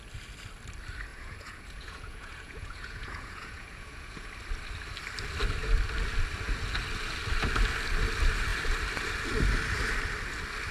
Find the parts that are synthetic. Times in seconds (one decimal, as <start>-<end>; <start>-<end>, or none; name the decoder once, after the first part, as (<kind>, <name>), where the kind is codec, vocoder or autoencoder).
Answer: 1.1-4.3 (vocoder, Vocos)